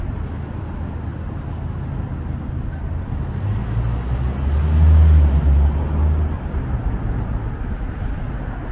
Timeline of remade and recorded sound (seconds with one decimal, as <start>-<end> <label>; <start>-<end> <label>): 0.0-8.7 recorded